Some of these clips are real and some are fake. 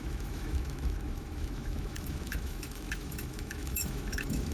fake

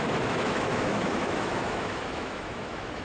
fake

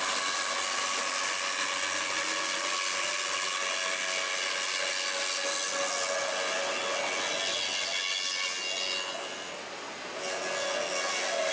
real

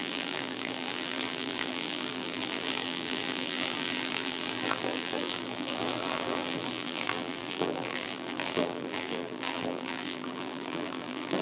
fake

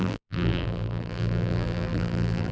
fake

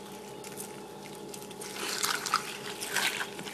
real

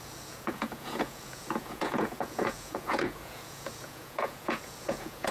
fake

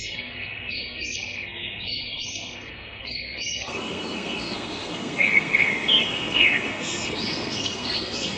fake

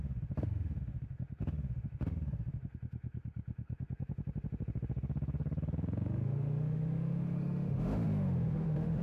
fake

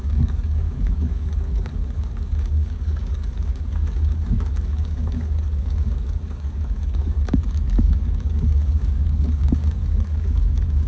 fake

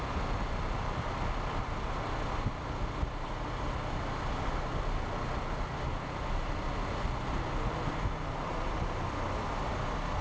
real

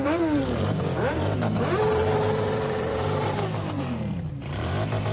fake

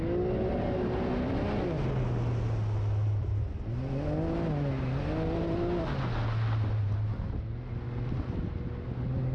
real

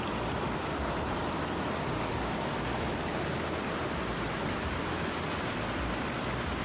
real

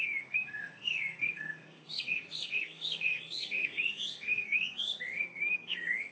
fake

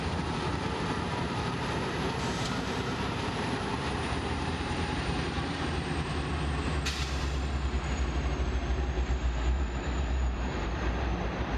fake